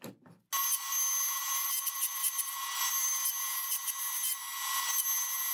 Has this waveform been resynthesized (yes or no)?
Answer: no